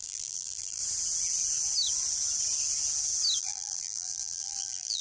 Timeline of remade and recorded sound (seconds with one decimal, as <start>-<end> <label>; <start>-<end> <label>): 0.0-0.8 remade; 0.8-3.4 recorded; 3.4-5.0 remade